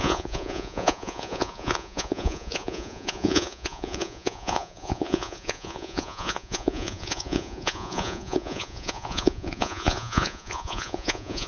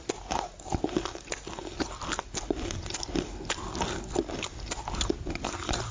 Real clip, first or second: second